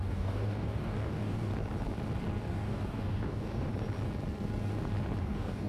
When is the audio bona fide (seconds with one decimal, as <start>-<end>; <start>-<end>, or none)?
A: 1.5-2.4; 3.7-5.2